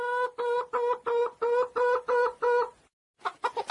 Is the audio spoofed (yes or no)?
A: no